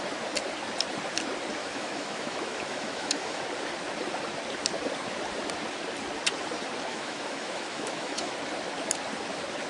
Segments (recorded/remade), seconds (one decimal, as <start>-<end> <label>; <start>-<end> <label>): 0.0-1.6 recorded; 1.6-3.4 remade; 3.4-6.9 recorded; 6.9-8.3 remade; 8.3-9.7 recorded